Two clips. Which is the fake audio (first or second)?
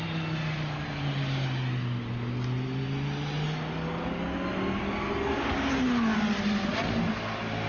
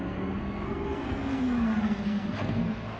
second